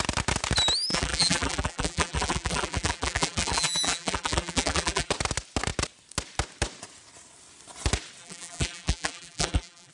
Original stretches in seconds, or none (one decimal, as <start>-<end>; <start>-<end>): 0.0-0.9; 5.1-8.2